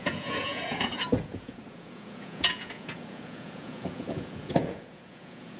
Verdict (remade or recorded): remade